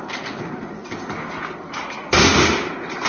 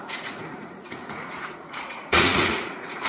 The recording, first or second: first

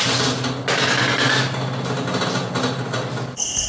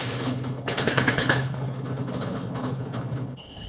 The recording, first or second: first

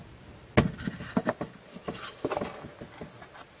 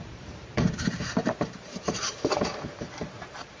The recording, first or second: first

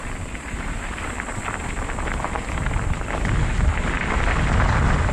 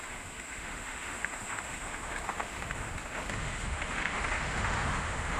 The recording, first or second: first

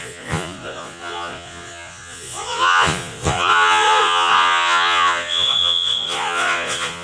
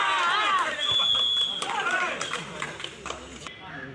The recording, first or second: second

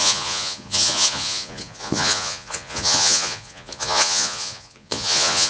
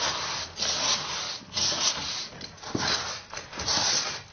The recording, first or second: second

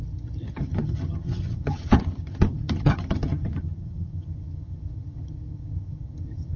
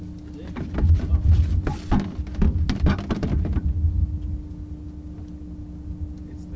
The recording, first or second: second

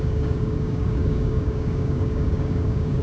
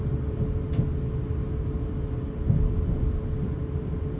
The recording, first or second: second